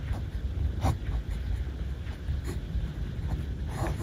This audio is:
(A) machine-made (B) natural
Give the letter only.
B